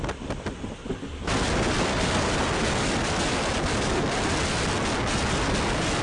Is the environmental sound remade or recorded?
recorded